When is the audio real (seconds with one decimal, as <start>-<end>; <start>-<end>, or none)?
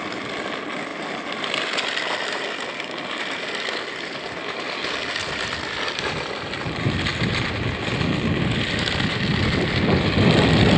0.0-10.8